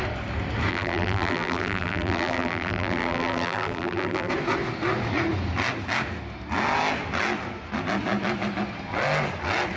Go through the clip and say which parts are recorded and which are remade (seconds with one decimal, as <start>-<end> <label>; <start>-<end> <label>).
0.0-0.7 recorded; 0.7-4.3 remade; 4.3-9.8 recorded